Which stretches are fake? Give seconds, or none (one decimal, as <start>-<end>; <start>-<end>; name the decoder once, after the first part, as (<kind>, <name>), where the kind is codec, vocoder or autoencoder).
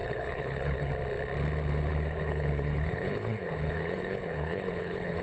0.0-0.9 (codec, HILCodec); 1.9-5.2